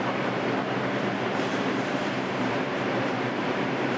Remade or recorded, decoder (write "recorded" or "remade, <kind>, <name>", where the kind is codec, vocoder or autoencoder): remade, vocoder, BigVGAN v2